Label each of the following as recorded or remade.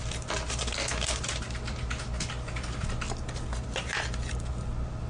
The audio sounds recorded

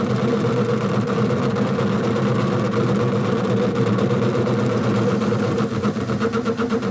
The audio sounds recorded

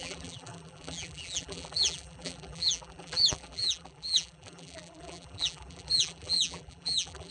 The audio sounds remade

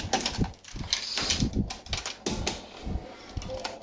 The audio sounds recorded